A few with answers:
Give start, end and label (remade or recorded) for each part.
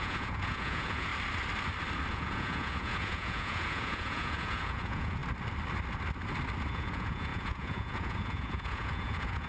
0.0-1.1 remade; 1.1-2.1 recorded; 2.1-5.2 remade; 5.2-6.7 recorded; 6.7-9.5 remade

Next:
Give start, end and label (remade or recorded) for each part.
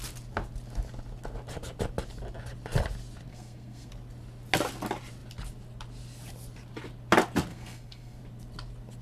0.0-3.3 recorded; 3.3-3.9 remade; 3.9-7.5 recorded; 7.5-8.2 remade; 8.2-9.0 recorded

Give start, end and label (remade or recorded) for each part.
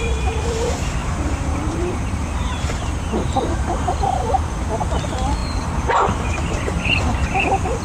0.0-1.0 recorded; 1.0-4.0 remade; 4.0-5.4 recorded; 5.4-6.8 remade; 6.8-7.8 recorded